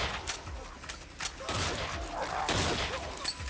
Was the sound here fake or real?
real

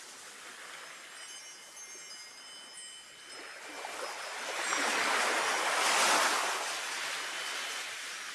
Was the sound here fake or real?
real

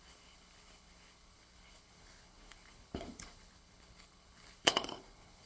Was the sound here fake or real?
fake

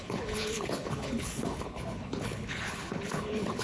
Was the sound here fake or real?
fake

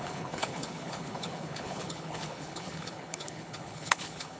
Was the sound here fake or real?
fake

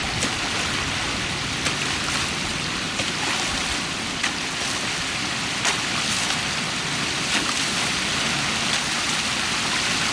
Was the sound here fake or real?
real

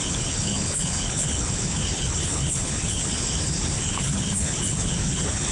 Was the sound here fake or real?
fake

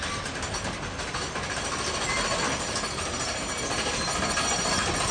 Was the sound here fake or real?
real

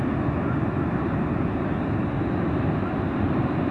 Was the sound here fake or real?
real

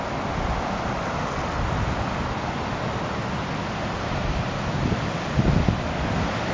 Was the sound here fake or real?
real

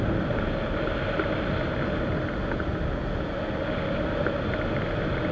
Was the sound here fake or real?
real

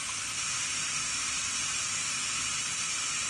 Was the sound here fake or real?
real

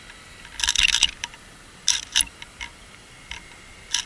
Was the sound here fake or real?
real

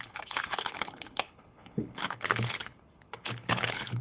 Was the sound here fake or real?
fake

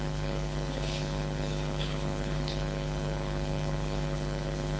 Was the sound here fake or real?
fake